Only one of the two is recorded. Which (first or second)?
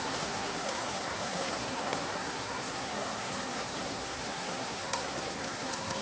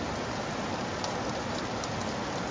second